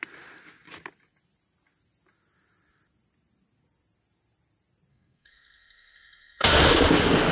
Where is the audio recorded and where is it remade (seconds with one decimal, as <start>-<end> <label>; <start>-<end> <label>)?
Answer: 0.0-4.9 recorded; 4.9-6.6 remade; 6.6-7.3 recorded

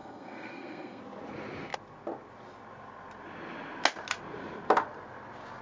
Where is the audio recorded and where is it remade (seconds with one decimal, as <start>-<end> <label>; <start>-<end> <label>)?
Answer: 0.0-1.0 remade; 1.0-5.6 recorded

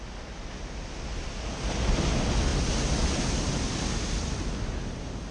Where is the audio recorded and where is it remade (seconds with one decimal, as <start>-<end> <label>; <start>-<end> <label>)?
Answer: 0.0-5.3 recorded